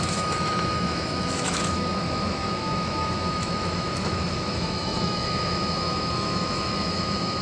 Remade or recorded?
remade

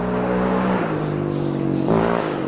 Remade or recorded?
remade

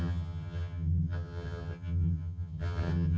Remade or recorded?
remade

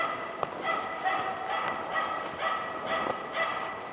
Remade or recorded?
recorded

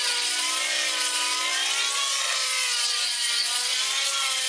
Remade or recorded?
recorded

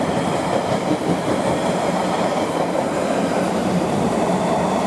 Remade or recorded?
remade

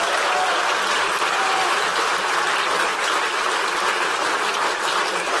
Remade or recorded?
remade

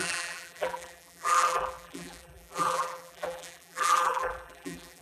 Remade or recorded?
remade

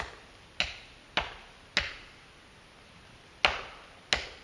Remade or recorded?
recorded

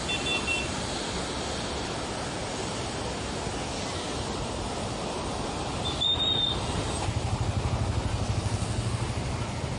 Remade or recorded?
recorded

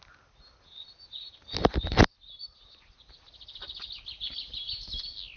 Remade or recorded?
recorded